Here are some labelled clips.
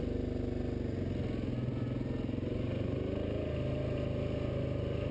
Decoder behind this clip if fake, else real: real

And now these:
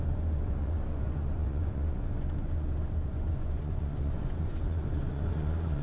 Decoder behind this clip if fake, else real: fake, vocoder, Vocos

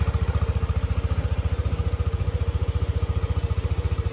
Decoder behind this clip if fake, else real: real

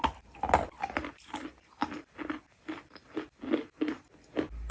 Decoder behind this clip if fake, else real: real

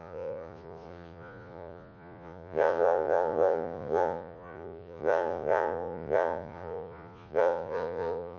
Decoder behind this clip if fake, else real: fake, vocoder, Vocos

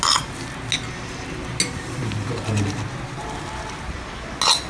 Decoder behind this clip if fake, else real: real